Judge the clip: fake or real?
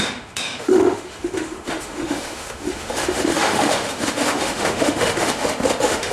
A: fake